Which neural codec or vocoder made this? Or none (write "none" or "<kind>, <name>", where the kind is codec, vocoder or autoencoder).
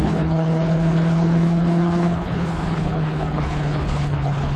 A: codec, HILCodec